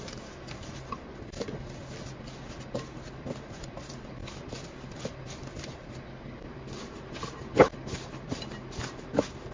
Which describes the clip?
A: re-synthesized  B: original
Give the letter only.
B